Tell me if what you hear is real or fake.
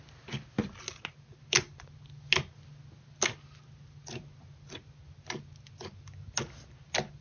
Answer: real